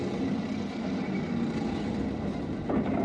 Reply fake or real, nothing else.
real